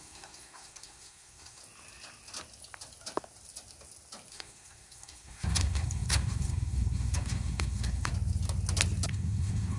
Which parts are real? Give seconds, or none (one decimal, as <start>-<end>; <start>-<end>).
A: 1.6-4.3; 8.1-9.1

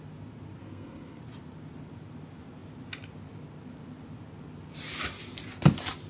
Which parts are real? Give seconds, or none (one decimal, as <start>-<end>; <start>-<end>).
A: 0.0-0.6; 1.2-6.1